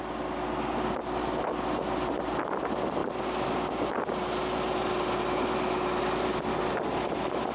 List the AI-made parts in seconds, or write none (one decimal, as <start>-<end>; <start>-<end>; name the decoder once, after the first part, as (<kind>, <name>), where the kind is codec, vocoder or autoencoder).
none